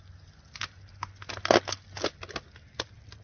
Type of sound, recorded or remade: recorded